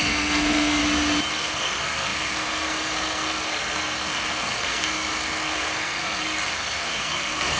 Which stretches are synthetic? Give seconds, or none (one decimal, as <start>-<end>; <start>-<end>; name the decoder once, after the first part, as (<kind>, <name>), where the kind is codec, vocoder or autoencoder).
0.0-0.8 (codec, SNAC); 1.3-7.6